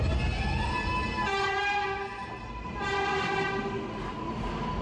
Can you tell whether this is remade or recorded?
recorded